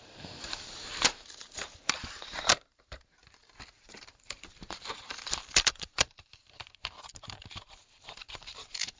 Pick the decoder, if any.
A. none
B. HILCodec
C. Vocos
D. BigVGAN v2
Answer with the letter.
D